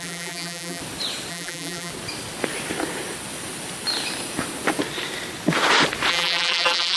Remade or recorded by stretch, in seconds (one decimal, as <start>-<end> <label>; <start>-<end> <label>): 0.0-0.8 remade; 0.8-1.3 recorded; 1.3-1.9 remade; 1.9-6.1 recorded; 6.1-7.0 remade